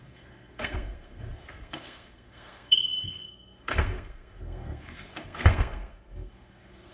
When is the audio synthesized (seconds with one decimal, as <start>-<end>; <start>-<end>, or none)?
0.0-6.9